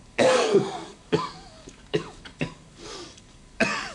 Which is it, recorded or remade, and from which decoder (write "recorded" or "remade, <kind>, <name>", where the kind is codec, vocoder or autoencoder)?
remade, codec, DAC